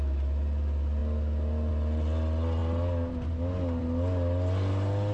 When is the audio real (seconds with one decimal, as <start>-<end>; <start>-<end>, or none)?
0.0-5.1